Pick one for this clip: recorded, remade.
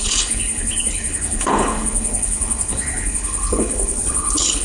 remade